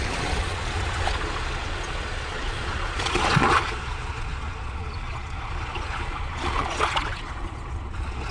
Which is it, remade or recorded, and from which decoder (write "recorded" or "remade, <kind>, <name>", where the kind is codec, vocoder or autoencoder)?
remade, vocoder, Vocos